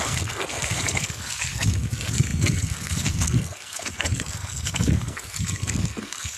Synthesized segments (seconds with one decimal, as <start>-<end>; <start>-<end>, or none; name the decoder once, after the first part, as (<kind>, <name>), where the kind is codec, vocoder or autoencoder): 0.0-6.4 (codec, SNAC)